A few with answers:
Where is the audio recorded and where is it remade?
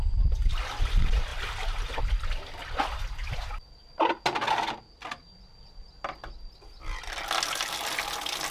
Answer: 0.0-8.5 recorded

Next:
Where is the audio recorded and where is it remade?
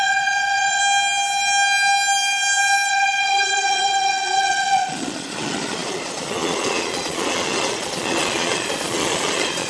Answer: 0.0-0.8 remade; 0.8-2.9 recorded; 2.9-9.7 remade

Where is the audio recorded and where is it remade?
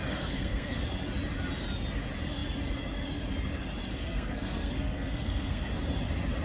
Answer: 0.0-0.8 remade; 0.8-3.9 recorded; 3.9-5.7 remade; 5.7-6.4 recorded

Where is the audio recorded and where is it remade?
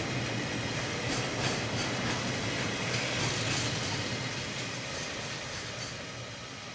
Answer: 0.0-6.7 recorded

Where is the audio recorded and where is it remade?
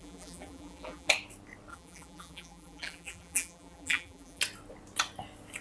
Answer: 0.0-1.1 remade; 1.1-1.7 recorded; 1.7-4.4 remade; 4.4-5.6 recorded